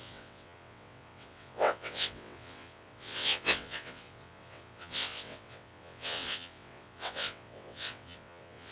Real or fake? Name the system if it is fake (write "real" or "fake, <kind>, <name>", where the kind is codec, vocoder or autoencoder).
fake, vocoder, WaveNeXt